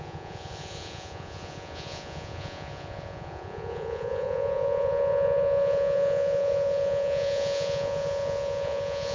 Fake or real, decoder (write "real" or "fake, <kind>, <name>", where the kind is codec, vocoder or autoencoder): fake, vocoder, Vocos